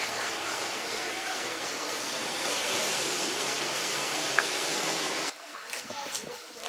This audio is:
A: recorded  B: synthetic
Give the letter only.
B